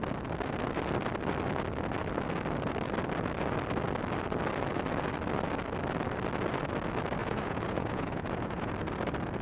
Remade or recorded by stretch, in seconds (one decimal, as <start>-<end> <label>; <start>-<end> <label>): 0.0-7.2 recorded; 7.2-8.7 remade; 8.7-9.4 recorded